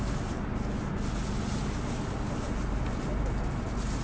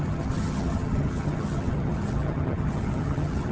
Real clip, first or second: first